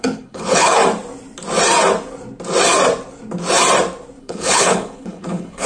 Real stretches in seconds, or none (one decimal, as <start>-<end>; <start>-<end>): 0.8-4.2